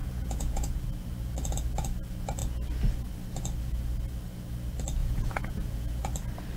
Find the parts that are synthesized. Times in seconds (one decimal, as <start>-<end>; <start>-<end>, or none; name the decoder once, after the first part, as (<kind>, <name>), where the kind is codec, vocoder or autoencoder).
0.0-0.8 (vocoder, Vocos); 5.0-6.0